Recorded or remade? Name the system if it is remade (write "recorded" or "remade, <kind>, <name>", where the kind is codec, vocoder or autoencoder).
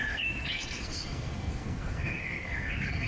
remade, codec, SNAC